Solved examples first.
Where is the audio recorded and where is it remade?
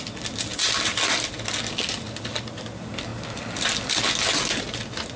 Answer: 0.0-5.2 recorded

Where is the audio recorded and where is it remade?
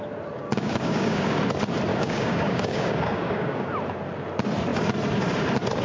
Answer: 0.0-0.4 recorded; 0.4-1.4 remade; 1.4-1.9 recorded; 1.9-3.7 remade; 3.7-5.8 recorded